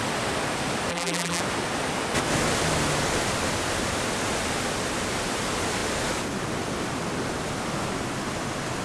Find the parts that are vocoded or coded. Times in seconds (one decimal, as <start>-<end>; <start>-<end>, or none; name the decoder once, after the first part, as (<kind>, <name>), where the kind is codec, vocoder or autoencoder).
0.9-1.4 (vocoder, BigVGAN v2)